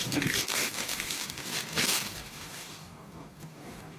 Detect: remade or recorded remade